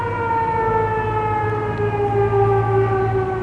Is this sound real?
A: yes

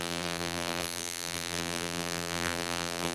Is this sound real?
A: no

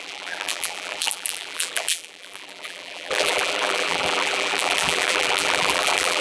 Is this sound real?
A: no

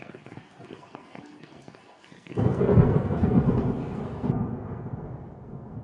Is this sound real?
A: no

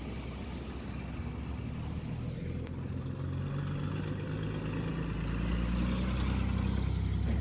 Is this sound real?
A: yes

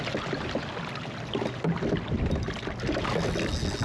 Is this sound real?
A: yes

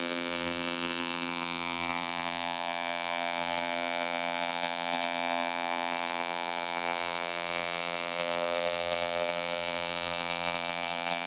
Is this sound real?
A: no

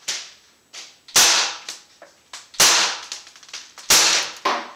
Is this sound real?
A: yes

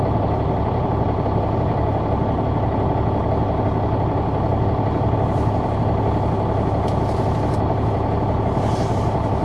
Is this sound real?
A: yes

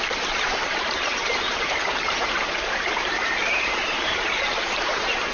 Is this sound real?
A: no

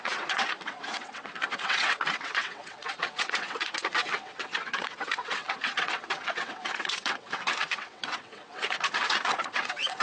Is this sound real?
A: no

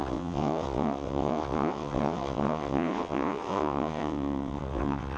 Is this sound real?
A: no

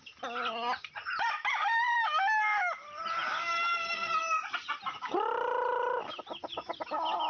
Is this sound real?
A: yes